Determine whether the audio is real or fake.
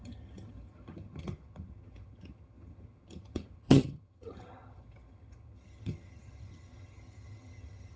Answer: fake